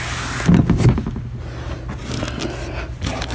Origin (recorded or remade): recorded